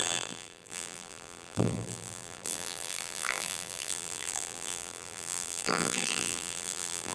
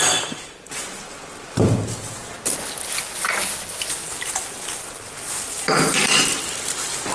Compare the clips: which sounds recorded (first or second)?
second